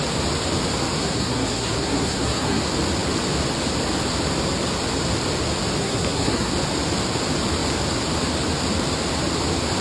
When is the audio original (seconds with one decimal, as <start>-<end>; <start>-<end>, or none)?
0.0-0.9; 2.6-5.8; 6.5-9.8